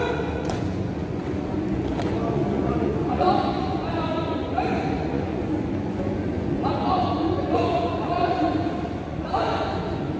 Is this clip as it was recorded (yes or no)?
no